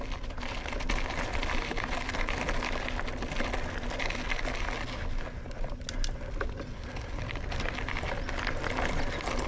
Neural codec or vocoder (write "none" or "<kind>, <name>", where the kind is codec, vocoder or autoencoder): none